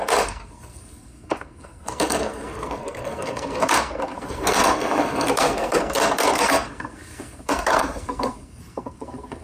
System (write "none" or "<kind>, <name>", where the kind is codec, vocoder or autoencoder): codec, SNAC